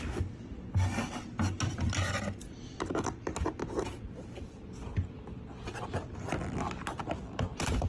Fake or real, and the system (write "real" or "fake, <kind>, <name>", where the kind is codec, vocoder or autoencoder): real